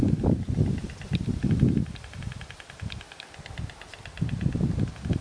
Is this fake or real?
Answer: real